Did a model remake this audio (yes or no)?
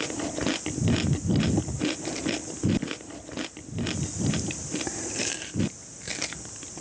no